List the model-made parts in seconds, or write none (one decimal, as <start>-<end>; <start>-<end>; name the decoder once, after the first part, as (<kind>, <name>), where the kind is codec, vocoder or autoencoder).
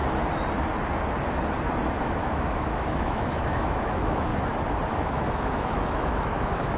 2.0-4.3 (autoencoder, DAC-VAE); 4.9-6.8